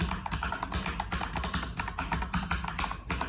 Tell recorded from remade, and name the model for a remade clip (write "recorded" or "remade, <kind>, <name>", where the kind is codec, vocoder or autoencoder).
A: recorded